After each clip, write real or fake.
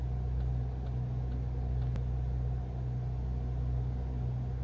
real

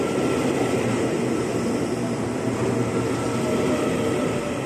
real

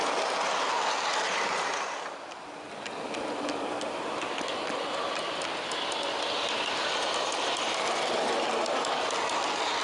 real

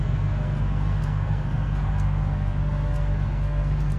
fake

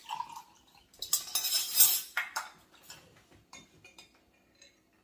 real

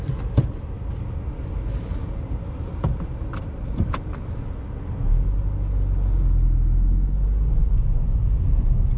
real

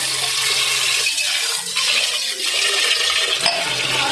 real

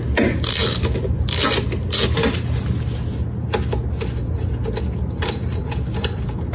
real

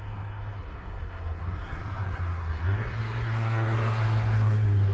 fake